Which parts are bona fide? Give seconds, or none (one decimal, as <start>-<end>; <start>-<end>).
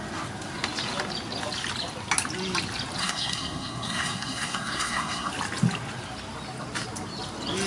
0.0-3.0; 5.3-7.7